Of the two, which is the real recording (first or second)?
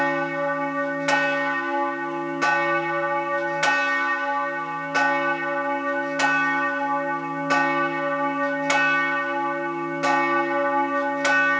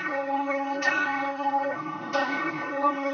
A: first